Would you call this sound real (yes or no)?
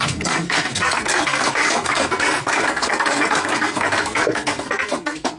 no